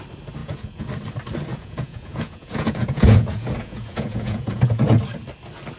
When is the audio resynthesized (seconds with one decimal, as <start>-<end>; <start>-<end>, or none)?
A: 0.4-0.9; 1.5-5.0